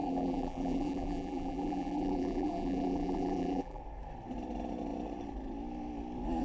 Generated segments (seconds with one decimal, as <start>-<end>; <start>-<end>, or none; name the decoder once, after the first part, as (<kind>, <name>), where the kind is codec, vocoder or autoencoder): 0.0-3.8 (vocoder, BigVGAN v2)